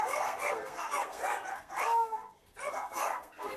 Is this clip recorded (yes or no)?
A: no